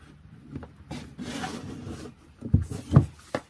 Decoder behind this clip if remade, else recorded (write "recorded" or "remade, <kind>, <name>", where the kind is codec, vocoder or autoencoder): recorded